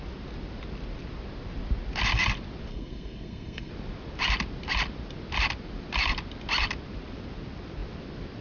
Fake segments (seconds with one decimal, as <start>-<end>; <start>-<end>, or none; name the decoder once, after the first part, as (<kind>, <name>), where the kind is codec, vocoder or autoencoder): 2.7-3.7 (codec, SNAC)